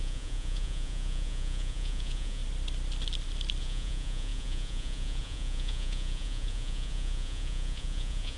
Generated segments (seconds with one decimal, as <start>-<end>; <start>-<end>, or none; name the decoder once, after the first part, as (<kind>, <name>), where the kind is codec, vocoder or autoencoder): 0.0-2.4 (vocoder, Vocos); 3.6-8.4

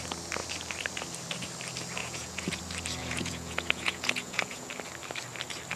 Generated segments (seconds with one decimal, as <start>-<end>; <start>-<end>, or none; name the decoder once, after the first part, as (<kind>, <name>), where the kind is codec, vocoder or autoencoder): 2.0-2.6 (vocoder, Vocos); 3.0-4.7

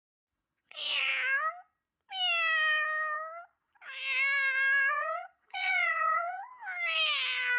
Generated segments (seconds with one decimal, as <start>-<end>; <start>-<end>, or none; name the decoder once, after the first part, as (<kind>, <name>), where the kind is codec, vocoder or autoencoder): 0.0-1.1 (vocoder, Vocos); 4.9-6.5

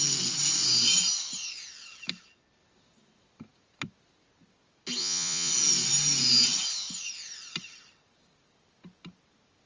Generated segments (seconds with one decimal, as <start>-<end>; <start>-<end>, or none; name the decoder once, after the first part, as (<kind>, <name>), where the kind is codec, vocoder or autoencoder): 5.0-5.5 (vocoder, Vocos)

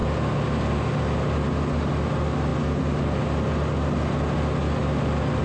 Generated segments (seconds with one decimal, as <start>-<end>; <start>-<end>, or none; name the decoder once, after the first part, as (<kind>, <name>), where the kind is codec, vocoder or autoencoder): none